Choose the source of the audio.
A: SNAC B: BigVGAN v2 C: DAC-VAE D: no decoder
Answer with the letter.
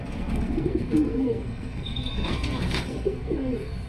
A